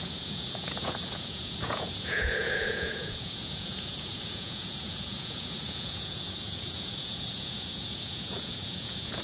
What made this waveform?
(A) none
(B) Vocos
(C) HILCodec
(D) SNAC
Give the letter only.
B